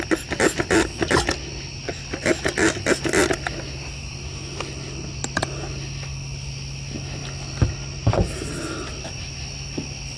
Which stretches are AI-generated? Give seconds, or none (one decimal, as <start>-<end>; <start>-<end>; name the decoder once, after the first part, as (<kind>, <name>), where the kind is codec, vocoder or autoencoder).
none